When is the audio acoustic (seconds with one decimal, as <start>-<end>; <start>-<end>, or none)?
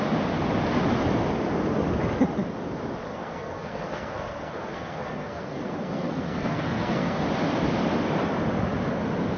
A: 0.0-3.1; 7.2-9.4